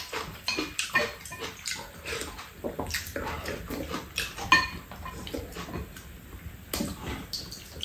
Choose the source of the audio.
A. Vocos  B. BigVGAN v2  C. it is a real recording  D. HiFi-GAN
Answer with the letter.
C